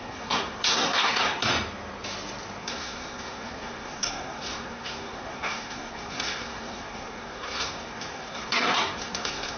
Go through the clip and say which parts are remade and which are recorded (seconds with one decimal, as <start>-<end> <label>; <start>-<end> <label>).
0.0-1.5 remade; 1.5-2.6 recorded; 2.6-9.6 remade